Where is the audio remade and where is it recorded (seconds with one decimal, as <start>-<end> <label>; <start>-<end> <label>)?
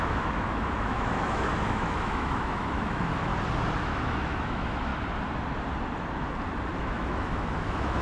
0.0-3.3 remade; 3.3-3.8 recorded; 3.8-4.9 remade; 4.9-6.8 recorded; 6.8-8.0 remade